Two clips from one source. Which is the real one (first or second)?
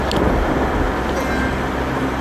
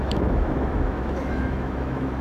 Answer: first